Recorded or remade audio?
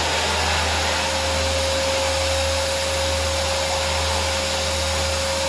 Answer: recorded